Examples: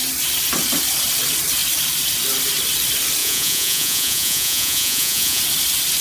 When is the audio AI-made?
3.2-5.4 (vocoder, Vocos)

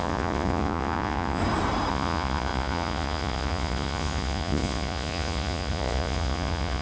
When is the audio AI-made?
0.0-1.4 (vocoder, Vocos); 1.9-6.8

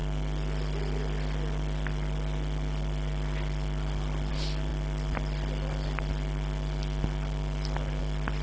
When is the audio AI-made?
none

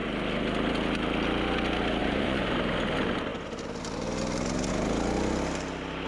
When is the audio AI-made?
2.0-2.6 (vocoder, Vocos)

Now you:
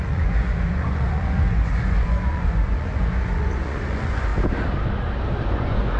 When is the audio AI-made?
0.0-4.3 (vocoder, Vocos); 5.5-6.0

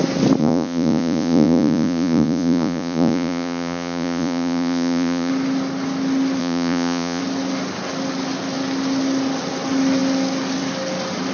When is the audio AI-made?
0.4-5.3 (vocoder, Vocos); 6.4-7.2